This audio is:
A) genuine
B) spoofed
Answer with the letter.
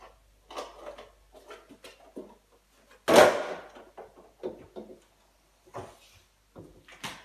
A